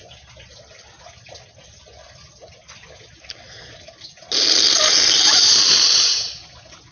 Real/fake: real